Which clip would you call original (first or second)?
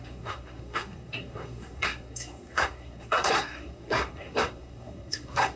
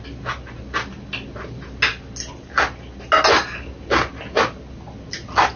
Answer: second